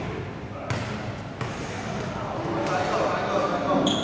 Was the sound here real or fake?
real